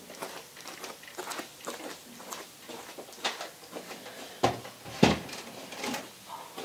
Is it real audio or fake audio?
real